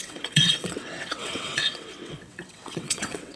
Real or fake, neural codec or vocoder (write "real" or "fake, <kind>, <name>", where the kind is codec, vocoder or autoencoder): fake, vocoder, WaveNeXt